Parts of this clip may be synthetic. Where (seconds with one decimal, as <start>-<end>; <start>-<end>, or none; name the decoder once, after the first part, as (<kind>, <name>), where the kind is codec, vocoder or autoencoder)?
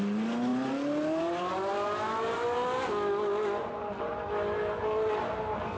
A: none